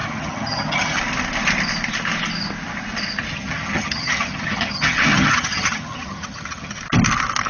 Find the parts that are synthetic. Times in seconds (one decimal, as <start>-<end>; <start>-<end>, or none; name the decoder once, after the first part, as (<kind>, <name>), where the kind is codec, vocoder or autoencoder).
0.0-1.0 (vocoder, HiFi-GAN); 3.3-6.8